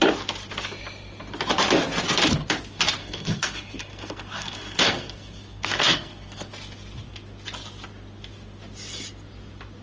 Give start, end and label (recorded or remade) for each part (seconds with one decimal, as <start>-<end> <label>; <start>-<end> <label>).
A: 0.0-3.0 recorded; 3.0-6.5 remade; 6.5-9.8 recorded